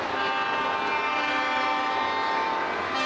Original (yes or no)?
yes